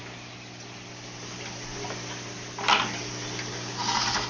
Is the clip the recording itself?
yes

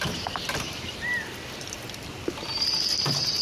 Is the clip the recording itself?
no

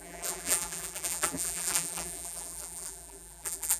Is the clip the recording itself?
no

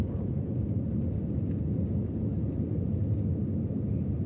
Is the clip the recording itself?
yes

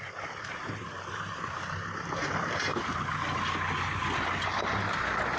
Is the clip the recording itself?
yes